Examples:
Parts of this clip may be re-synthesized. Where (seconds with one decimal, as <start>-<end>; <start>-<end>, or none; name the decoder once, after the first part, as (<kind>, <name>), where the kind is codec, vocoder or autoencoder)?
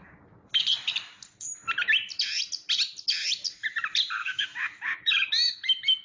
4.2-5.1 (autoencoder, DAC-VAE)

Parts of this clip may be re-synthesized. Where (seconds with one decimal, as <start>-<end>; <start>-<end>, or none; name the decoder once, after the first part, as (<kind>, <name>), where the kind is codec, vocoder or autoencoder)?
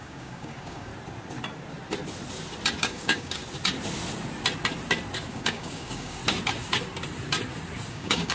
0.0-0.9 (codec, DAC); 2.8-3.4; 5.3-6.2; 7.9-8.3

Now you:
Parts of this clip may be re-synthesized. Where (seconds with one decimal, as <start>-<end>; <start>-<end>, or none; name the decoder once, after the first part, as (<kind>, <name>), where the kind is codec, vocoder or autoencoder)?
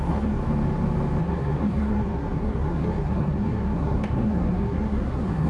0.0-0.4 (codec, SNAC); 1.2-5.5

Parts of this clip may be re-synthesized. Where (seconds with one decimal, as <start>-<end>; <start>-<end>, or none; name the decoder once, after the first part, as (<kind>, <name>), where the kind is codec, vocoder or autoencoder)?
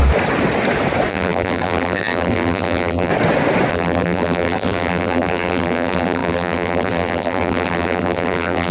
1.1-3.1 (vocoder, BigVGAN v2); 3.7-8.7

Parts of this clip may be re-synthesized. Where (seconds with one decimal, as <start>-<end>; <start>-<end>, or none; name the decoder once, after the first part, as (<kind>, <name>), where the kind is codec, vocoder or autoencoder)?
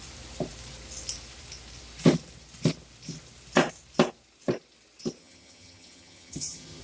5.2-6.8 (vocoder, HiFi-GAN)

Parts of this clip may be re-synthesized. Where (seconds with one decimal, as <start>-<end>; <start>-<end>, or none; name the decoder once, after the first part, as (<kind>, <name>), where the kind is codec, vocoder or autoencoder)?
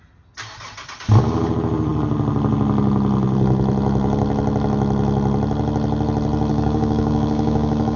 6.5-8.0 (codec, DAC)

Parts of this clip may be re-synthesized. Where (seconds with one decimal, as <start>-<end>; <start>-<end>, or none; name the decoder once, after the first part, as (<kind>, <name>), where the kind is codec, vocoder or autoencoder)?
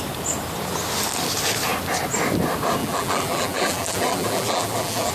2.8-5.1 (vocoder, BigVGAN v2)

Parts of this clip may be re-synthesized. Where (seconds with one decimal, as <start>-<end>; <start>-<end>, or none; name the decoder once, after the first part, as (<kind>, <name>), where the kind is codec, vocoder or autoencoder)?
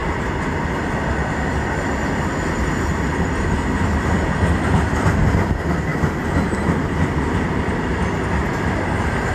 none